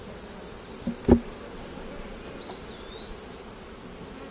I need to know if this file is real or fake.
real